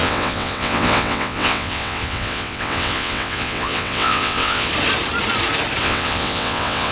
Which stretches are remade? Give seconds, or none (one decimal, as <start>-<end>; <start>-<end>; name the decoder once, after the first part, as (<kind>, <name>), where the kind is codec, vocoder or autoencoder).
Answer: 0.0-4.7 (vocoder, WaveNeXt); 5.8-6.9